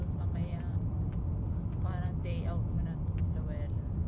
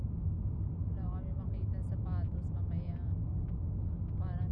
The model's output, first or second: first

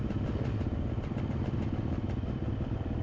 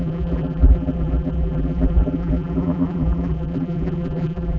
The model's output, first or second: second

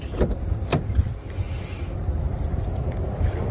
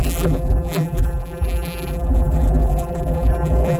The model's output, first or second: second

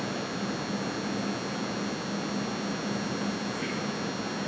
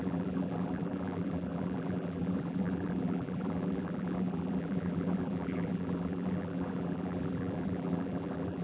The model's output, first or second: second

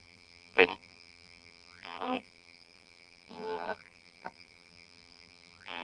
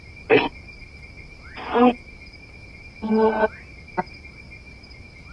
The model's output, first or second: first